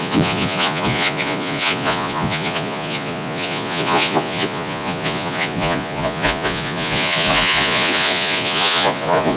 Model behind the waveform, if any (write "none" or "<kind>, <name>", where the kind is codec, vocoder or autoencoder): vocoder, Vocos